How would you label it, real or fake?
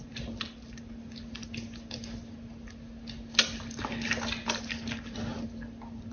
real